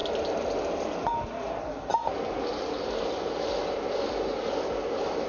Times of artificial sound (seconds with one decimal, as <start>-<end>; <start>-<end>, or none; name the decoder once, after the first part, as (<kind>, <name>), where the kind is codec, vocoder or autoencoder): none